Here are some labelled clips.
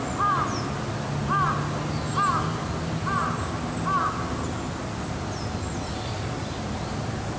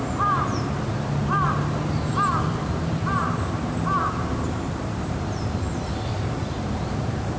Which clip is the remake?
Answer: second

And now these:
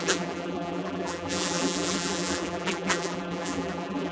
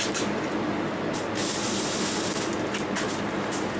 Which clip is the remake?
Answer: first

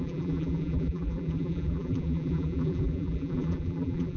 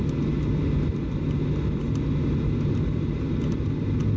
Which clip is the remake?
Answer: first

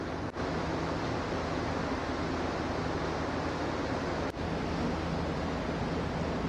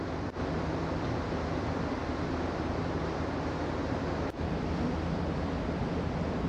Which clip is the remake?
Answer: second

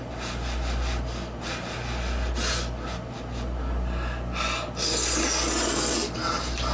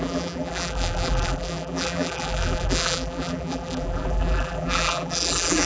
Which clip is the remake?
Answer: second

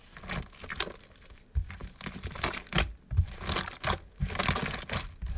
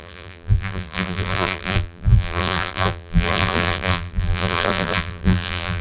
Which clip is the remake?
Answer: second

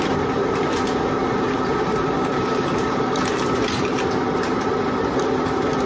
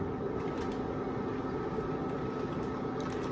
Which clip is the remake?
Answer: first